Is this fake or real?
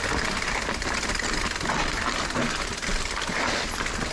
real